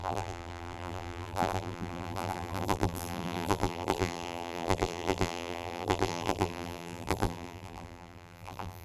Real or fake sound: fake